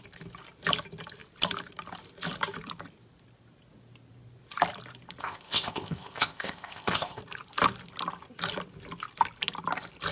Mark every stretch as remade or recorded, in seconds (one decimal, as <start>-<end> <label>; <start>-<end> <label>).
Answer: 0.0-5.2 recorded; 5.2-7.2 remade; 7.2-10.1 recorded